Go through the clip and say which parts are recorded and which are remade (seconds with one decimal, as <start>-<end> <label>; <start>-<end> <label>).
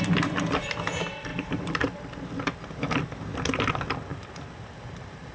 0.0-1.3 recorded; 1.3-2.0 remade; 2.0-4.1 recorded; 4.1-5.3 remade